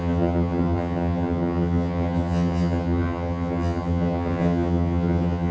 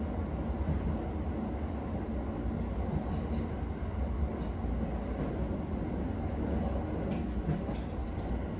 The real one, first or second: second